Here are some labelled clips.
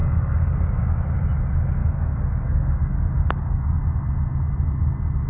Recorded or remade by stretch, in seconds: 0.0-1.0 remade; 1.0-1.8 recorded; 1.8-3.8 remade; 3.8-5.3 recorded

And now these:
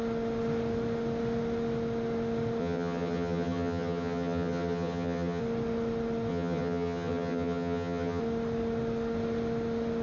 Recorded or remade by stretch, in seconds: 0.0-2.6 recorded; 2.6-5.4 remade; 5.4-6.3 recorded; 6.3-8.2 remade; 8.2-10.0 recorded

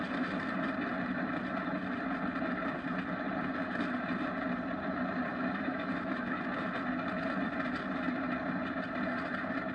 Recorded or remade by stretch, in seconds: 0.0-5.3 recorded; 5.3-6.4 remade; 6.4-9.7 recorded